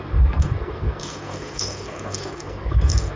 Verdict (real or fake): fake